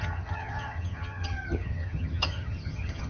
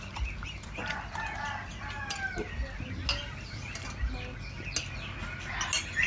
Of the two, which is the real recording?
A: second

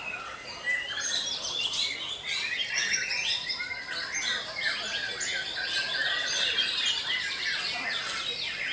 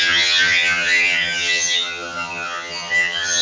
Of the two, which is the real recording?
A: first